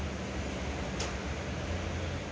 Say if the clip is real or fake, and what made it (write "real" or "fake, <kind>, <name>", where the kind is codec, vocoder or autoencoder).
real